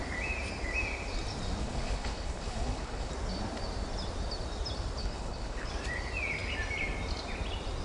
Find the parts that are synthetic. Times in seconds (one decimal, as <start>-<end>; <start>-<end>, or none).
1.6-3.1; 5.0-5.7